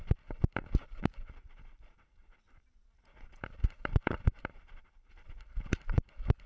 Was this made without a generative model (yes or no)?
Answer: no